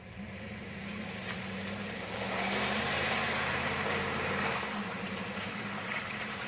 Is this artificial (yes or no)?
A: yes